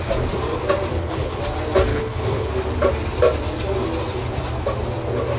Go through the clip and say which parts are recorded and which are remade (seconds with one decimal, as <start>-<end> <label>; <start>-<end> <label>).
0.0-0.9 recorded; 0.9-1.4 remade; 1.4-1.9 recorded; 1.9-2.5 remade; 2.5-5.4 recorded